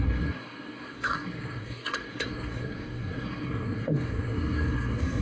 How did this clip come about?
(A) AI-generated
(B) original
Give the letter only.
A